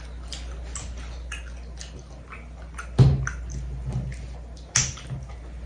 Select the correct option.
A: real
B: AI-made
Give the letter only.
A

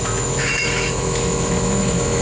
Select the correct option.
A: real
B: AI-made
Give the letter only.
B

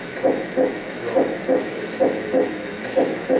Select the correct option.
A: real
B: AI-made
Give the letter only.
B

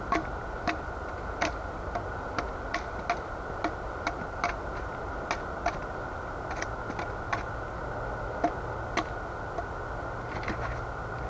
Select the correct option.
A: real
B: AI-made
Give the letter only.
A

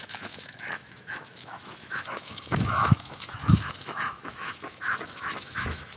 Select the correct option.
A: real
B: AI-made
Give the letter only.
B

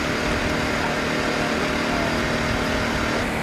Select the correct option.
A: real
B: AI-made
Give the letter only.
A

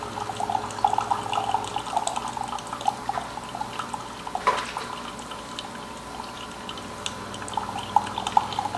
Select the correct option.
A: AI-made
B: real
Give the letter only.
B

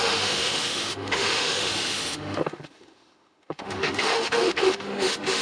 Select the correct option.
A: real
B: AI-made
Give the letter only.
B